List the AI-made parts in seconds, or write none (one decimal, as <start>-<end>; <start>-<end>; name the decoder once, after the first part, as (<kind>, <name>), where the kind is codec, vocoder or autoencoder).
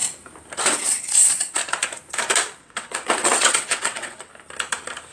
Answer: 0.6-1.6 (vocoder, WaveNeXt); 2.6-4.3